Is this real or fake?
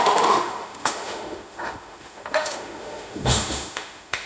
fake